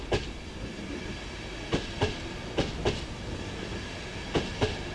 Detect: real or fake real